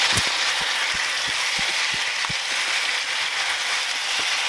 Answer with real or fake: real